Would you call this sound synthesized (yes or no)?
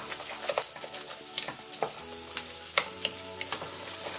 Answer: no